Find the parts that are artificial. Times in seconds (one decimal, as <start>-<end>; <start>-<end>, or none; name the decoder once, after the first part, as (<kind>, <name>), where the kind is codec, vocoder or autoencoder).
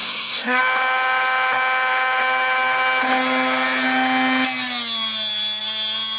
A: 0.0-0.6 (codec, SNAC)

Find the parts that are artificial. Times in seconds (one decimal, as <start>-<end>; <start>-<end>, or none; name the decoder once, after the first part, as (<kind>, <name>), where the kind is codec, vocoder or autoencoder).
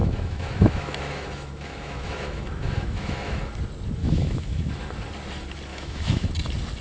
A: 0.0-3.4 (autoencoder, DAC-VAE); 4.0-4.7; 5.7-6.3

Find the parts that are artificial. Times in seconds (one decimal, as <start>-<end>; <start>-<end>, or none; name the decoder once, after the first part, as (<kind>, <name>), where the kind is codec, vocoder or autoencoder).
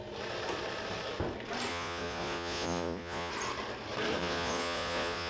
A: 1.7-3.3 (vocoder, Vocos); 4.2-5.3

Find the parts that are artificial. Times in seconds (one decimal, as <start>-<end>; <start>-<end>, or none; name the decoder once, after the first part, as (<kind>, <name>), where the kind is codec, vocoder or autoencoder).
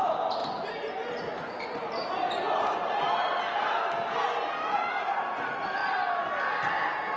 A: none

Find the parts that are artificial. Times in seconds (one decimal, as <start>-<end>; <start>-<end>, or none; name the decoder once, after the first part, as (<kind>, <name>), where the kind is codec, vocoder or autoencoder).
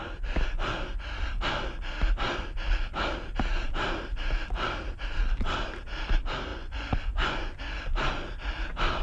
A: 6.5-7.6 (vocoder, Vocos)